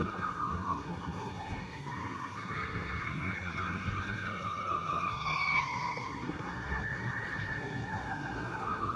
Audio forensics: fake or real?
fake